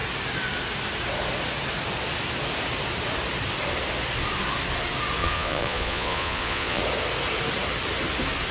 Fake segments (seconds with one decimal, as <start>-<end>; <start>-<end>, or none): 5.2-6.8